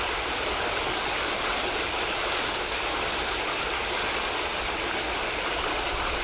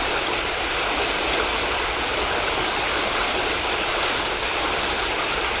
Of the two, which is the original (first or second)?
first